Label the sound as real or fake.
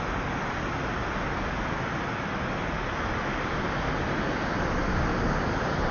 real